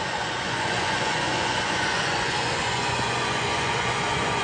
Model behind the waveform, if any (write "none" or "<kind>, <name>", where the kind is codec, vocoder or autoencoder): vocoder, Vocos